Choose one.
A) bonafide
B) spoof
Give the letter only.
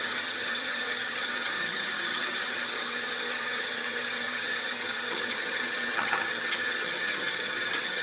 B